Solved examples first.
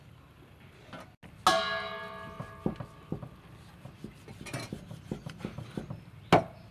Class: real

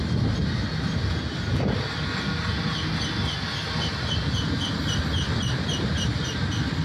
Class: real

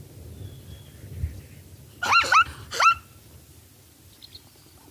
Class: real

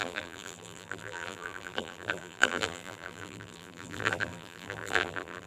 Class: fake